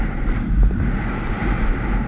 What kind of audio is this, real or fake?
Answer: real